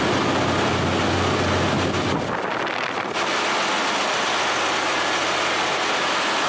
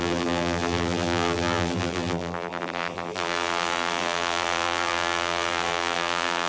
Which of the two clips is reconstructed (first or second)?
second